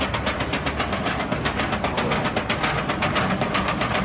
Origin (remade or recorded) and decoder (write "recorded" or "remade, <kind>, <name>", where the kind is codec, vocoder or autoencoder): recorded